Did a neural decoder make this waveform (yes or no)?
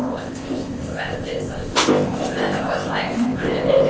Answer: yes